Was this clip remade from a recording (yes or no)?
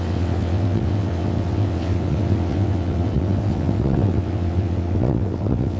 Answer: yes